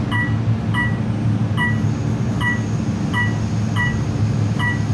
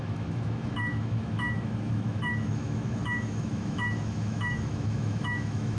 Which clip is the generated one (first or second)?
second